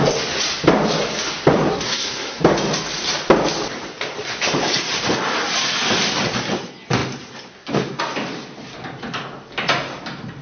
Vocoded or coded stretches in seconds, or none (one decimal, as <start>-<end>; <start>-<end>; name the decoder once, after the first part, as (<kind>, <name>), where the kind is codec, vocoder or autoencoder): 1.7-2.4 (codec, SNAC)